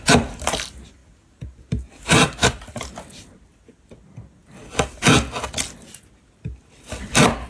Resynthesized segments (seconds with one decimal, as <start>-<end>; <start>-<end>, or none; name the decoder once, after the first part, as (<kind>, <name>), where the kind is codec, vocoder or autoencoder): none